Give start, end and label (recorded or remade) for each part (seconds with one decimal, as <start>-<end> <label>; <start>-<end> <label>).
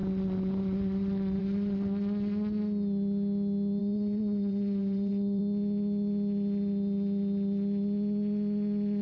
0.0-3.8 recorded; 3.8-5.4 remade; 5.4-9.0 recorded